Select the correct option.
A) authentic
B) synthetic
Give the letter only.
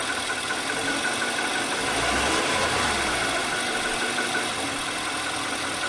A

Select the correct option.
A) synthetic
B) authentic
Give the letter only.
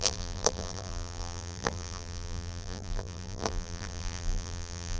A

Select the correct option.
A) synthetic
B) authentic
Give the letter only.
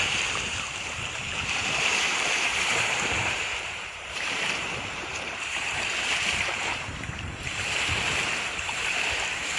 A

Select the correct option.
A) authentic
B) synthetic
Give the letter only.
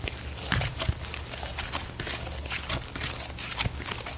A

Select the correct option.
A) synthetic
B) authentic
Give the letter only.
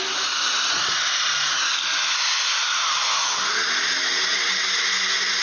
B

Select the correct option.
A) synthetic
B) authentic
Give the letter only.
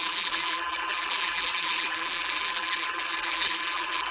A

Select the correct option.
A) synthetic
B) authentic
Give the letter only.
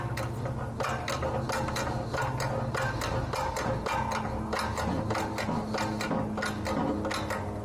B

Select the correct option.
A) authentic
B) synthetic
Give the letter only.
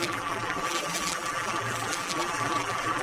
B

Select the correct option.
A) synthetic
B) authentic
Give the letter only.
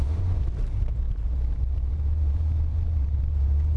A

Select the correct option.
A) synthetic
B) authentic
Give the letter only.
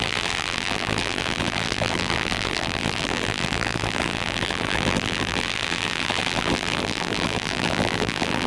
A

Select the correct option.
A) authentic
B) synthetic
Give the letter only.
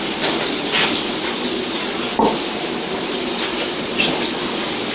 A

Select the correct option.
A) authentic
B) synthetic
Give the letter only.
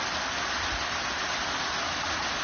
A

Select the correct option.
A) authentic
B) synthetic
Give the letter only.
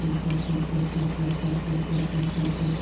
A